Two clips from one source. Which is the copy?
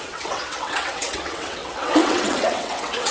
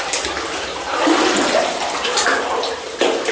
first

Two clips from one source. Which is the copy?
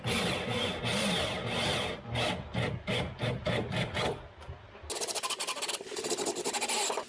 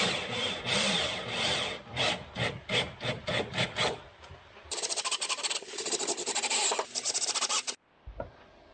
second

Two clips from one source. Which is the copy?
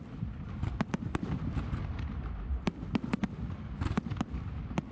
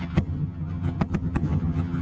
second